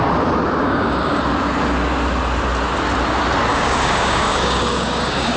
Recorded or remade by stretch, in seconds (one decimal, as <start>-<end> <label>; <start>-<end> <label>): 0.0-0.6 recorded; 0.6-1.2 remade; 1.2-3.5 recorded; 3.5-5.4 remade